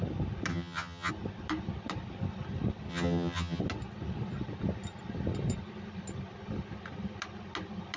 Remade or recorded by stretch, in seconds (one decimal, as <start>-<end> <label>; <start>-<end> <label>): 0.0-0.5 recorded; 0.5-1.1 remade; 1.1-2.9 recorded; 2.9-3.6 remade; 3.6-8.0 recorded